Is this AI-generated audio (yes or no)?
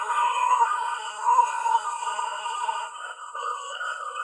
yes